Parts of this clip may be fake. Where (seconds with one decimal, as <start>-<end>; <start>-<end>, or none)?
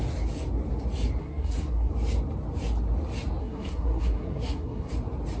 1.2-1.9; 3.4-4.9